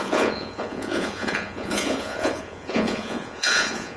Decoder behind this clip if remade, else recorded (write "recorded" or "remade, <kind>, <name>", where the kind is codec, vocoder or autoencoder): remade, vocoder, Vocos